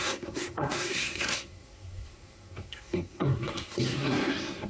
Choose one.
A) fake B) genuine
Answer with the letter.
A